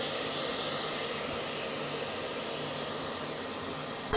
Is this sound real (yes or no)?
yes